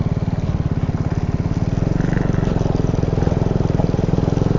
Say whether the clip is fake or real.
real